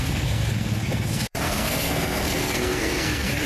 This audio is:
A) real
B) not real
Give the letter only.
B